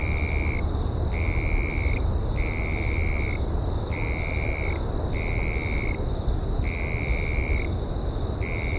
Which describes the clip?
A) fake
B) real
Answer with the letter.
B